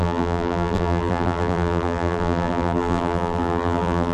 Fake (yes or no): yes